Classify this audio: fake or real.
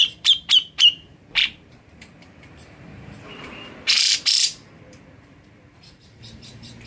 fake